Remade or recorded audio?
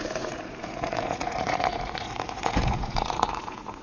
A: remade